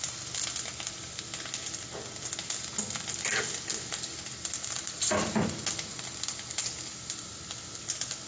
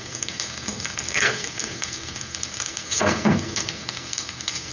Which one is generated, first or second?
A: second